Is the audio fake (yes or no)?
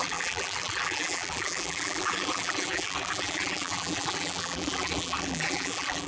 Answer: yes